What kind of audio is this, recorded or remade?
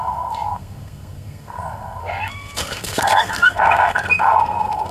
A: remade